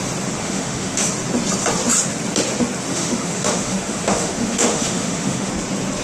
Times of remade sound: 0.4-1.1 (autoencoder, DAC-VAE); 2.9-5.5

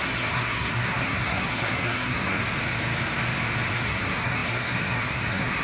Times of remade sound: 0.0-2.4 (codec, SNAC); 3.7-5.6